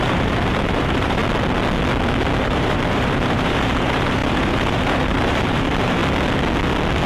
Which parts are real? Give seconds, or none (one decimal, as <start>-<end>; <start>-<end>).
1.2-2.4; 6.0-7.1